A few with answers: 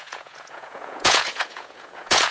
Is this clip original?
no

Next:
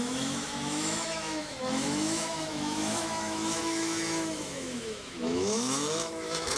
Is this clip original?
no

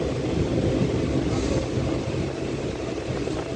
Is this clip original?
yes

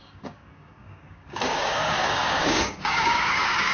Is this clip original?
no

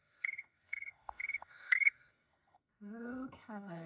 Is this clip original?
no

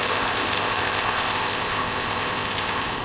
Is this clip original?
no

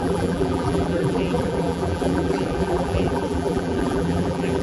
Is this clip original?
no